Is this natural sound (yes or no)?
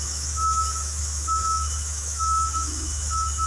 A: no